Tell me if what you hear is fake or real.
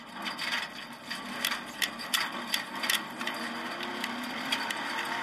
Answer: real